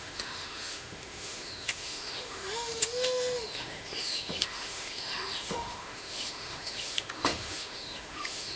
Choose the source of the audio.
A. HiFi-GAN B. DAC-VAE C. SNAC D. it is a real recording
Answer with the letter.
B